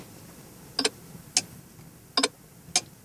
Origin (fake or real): real